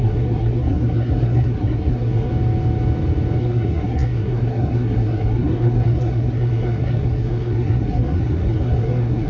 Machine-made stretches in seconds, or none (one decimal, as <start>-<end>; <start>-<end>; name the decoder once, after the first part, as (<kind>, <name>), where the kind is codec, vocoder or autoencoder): 0.0-2.3 (codec, SNAC); 3.4-9.3